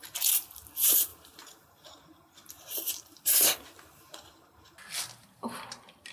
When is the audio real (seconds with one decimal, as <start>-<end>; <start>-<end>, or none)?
0.0-1.1; 4.8-6.1